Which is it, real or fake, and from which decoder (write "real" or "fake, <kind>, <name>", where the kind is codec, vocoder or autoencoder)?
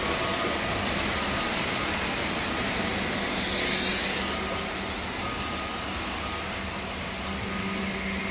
real